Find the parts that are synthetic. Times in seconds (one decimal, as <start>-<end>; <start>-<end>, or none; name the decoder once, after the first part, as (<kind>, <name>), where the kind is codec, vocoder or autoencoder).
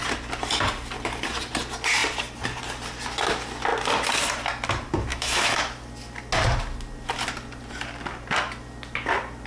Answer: 5.1-5.6 (autoencoder, DAC-VAE)